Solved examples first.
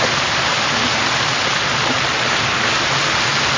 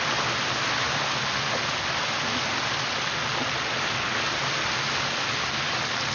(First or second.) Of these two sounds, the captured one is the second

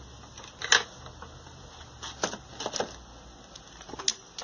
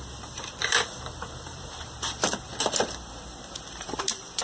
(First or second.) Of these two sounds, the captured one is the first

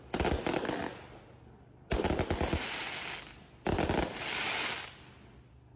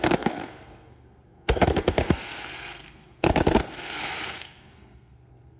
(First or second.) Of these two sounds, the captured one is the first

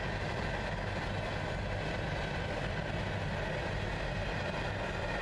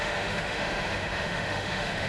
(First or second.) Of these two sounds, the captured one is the first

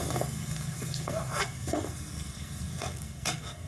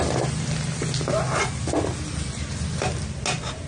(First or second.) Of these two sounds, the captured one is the second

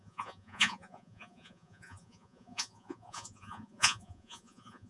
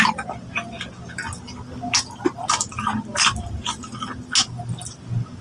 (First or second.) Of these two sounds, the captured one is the second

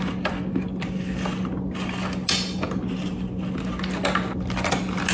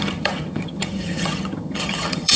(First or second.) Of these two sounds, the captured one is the first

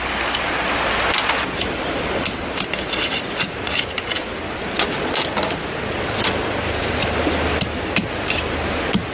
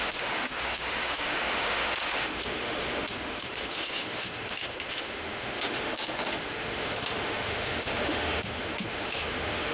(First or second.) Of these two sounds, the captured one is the first